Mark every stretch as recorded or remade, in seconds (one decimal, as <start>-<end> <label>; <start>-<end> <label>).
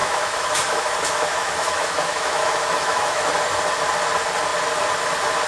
0.0-3.3 remade; 3.3-5.5 recorded